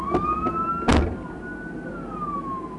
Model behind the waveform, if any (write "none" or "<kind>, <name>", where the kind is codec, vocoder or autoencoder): none